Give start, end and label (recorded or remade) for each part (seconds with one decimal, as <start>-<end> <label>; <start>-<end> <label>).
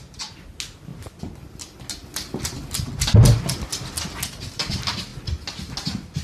0.0-6.2 recorded